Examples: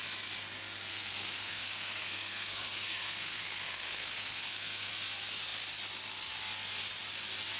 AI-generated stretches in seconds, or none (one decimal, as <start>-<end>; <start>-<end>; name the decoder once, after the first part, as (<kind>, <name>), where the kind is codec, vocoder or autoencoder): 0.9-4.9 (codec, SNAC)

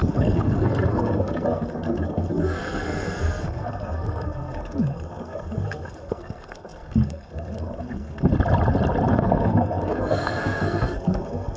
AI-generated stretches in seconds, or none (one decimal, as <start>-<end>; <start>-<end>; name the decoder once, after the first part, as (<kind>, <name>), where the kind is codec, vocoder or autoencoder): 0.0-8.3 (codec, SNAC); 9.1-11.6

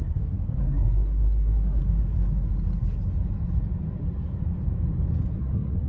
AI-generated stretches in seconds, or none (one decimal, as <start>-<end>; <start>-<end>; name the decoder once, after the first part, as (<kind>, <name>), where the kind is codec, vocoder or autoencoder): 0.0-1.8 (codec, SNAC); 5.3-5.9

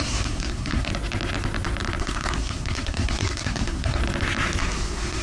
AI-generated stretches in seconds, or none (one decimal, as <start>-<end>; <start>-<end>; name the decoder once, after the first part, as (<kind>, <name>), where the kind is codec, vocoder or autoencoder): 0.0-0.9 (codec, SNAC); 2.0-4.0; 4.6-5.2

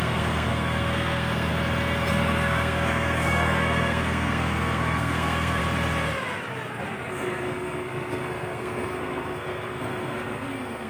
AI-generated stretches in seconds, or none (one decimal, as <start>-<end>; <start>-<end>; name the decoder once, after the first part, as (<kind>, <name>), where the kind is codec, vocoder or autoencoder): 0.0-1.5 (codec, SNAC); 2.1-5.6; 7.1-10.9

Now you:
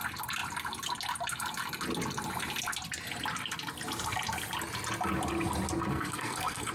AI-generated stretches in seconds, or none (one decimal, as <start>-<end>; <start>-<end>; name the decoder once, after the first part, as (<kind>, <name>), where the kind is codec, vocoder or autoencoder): 5.9-6.7 (codec, SNAC)

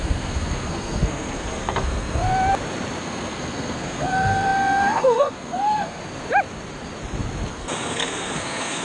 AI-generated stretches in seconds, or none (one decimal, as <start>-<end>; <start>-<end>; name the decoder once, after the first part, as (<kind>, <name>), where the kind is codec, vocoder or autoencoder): 0.0-2.3 (codec, SNAC); 3.0-6.0; 7.5-8.8